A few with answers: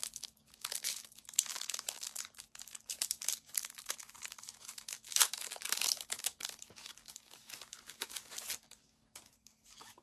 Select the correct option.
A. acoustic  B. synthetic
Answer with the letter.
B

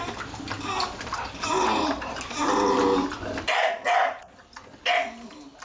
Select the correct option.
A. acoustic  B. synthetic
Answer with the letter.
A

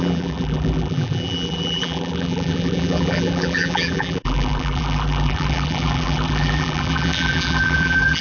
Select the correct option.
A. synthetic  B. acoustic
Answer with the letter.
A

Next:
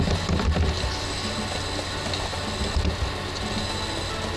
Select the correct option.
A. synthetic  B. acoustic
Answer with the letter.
B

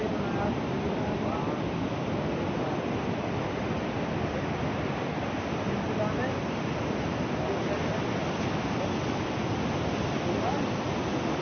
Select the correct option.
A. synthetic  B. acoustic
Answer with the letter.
B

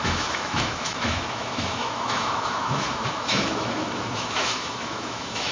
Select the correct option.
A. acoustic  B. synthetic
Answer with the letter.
B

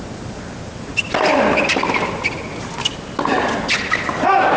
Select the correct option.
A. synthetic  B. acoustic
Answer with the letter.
B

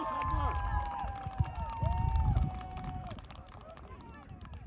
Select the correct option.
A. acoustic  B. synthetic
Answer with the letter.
A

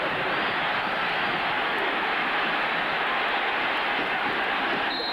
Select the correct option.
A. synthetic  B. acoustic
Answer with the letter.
B